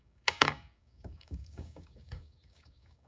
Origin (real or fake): fake